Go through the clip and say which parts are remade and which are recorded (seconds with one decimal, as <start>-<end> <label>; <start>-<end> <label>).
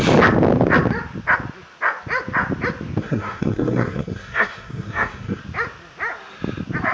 0.0-3.0 recorded; 3.0-5.4 remade; 5.4-6.9 recorded